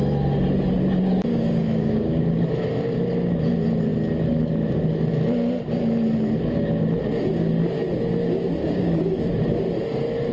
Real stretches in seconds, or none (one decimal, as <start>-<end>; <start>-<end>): 0.0-1.3; 2.2-8.6; 9.2-10.3